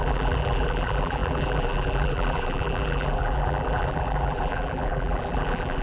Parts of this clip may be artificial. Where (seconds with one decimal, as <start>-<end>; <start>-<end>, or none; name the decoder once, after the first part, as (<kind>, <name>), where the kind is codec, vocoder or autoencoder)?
0.0-5.8 (vocoder, BigVGAN v2)